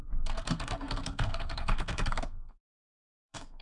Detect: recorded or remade remade